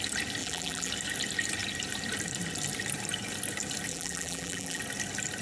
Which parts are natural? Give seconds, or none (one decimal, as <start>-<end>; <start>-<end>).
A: 0.0-0.4; 0.9-3.9; 4.8-5.4